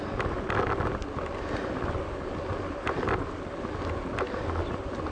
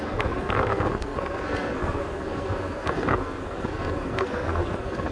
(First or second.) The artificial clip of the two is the second